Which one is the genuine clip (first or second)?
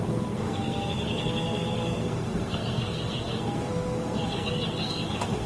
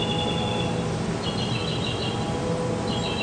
second